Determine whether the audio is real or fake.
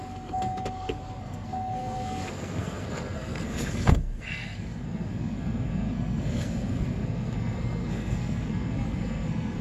fake